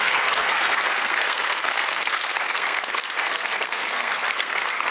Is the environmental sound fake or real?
fake